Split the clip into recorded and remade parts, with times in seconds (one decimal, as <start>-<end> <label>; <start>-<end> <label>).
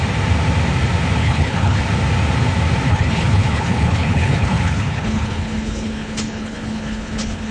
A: 0.0-1.2 recorded; 1.2-1.8 remade; 1.8-2.9 recorded; 2.9-7.5 remade